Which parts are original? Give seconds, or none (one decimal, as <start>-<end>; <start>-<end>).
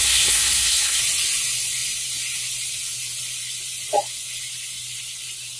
1.0-5.6